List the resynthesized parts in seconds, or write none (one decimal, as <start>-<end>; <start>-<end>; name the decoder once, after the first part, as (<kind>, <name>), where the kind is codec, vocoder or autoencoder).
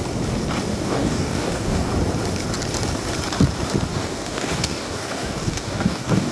0.7-1.9 (codec, DAC); 3.9-6.3